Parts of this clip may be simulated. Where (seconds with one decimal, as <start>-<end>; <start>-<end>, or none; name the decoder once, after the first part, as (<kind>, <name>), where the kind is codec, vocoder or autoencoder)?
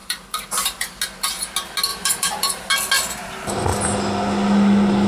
0.0-1.0 (vocoder, BigVGAN v2); 1.9-2.7